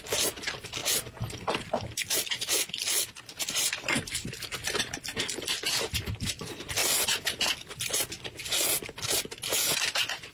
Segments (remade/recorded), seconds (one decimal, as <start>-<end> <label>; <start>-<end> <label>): 0.0-0.8 recorded; 0.8-5.2 remade; 5.2-6.8 recorded; 6.8-7.4 remade; 7.4-10.3 recorded